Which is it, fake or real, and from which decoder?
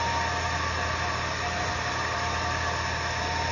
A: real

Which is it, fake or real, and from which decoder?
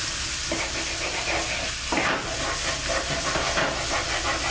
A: real